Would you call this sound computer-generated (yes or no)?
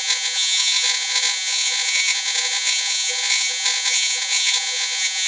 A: yes